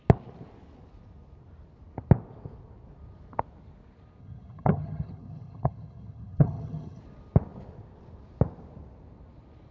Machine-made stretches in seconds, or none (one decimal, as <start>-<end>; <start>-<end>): 4.2-7.0